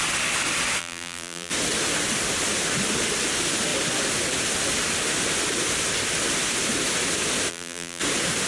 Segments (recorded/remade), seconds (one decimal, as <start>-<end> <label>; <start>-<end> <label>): 0.0-0.8 recorded; 0.8-1.5 remade; 1.5-7.5 recorded; 7.5-8.0 remade; 8.0-8.5 recorded

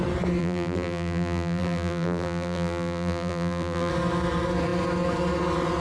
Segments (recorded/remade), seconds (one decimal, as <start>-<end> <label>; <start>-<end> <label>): 0.0-0.4 recorded; 0.4-3.9 remade; 3.9-5.8 recorded

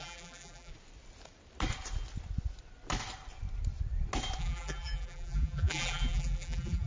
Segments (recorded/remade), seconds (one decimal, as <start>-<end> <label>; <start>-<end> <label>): 0.0-0.7 remade; 0.7-4.4 recorded; 4.4-6.9 remade

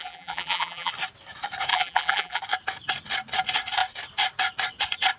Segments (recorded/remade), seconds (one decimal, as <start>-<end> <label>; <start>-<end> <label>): 0.0-0.9 remade; 0.9-1.7 recorded; 1.7-2.4 remade; 2.4-5.2 recorded

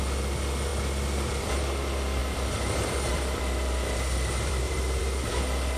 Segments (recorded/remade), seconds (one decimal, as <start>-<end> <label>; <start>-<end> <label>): 0.0-0.7 recorded; 0.7-1.5 remade; 1.5-2.2 recorded; 2.2-5.0 remade; 5.0-5.8 recorded

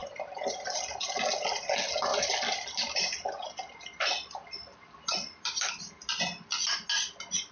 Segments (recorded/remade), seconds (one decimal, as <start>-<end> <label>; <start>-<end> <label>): 0.0-0.8 remade; 0.8-2.1 recorded; 2.1-5.7 remade; 5.7-7.5 recorded

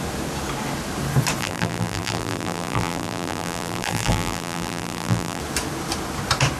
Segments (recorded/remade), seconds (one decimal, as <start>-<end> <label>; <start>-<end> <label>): 0.0-1.4 recorded; 1.4-5.4 remade; 5.4-6.6 recorded